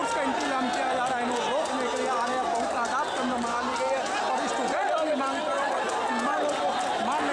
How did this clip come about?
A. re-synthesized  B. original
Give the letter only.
B